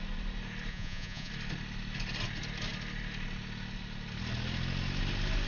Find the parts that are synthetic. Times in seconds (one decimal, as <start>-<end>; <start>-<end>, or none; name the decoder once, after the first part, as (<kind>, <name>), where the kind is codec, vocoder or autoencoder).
0.7-1.3 (vocoder, Vocos)